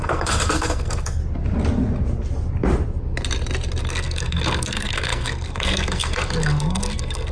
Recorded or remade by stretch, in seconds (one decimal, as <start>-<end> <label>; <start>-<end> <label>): 0.0-1.2 remade; 1.2-3.9 recorded; 3.9-7.3 remade